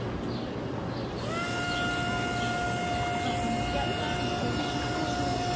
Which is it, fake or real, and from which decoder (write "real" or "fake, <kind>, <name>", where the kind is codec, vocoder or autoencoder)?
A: real